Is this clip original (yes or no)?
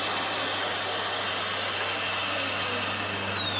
yes